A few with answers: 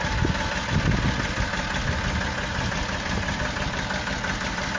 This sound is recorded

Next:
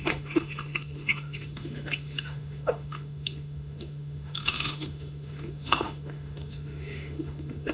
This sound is remade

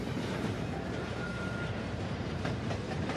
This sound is remade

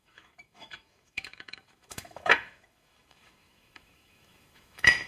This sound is remade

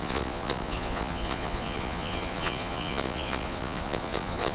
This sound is remade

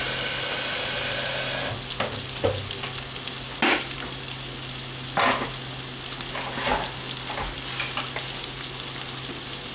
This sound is recorded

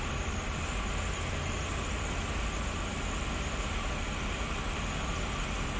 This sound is recorded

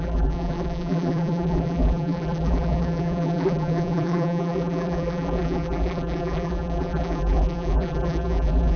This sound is remade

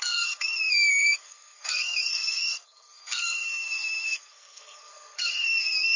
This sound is remade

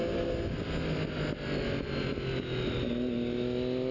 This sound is recorded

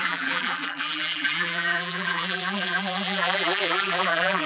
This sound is remade